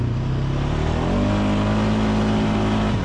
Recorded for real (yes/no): yes